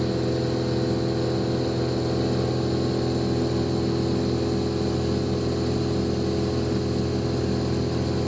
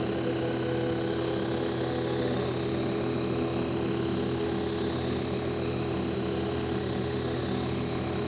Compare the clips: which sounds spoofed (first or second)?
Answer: second